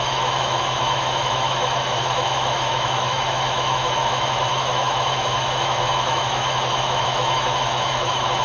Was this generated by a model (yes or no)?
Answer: yes